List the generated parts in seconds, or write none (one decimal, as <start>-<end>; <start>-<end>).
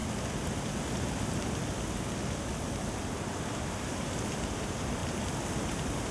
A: 3.4-5.0; 5.6-6.1